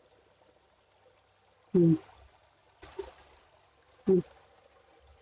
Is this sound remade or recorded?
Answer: recorded